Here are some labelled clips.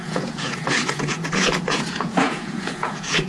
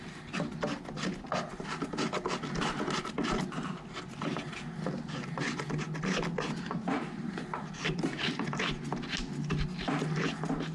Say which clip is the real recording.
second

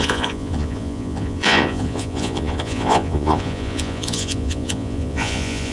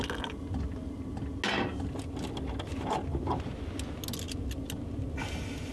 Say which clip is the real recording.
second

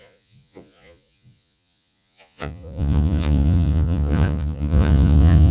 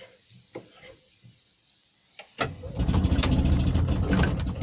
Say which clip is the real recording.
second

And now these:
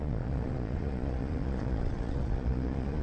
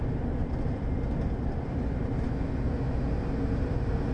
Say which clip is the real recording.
second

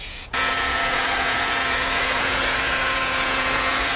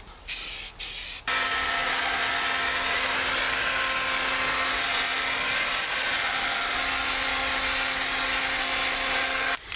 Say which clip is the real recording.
second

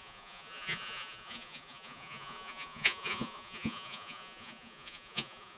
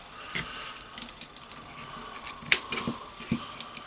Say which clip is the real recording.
second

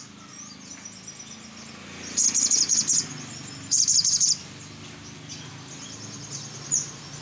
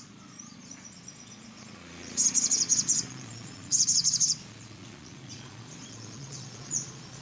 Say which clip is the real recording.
first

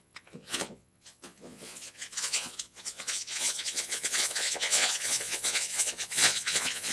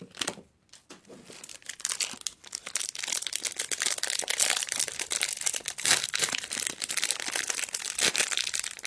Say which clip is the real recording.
second